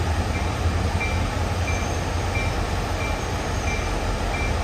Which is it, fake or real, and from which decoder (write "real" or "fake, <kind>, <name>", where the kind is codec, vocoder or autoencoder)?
real